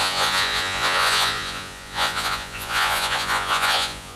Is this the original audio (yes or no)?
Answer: no